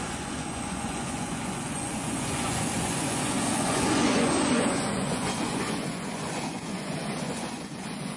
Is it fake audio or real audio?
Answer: fake